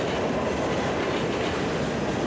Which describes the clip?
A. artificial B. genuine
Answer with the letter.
B